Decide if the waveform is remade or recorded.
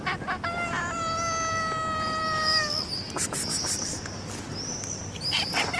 recorded